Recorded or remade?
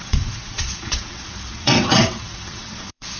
remade